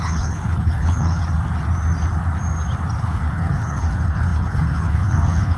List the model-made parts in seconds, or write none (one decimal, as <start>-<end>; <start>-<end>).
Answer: 0.0-1.2; 3.0-5.6